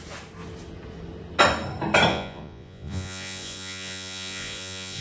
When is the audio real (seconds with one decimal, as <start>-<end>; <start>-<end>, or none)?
0.0-2.1